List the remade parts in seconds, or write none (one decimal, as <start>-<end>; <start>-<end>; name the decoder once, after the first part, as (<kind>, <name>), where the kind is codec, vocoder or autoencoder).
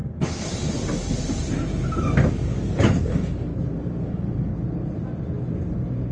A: 2.3-3.5 (codec, DAC); 4.0-4.5